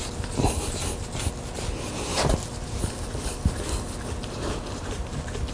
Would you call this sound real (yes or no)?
yes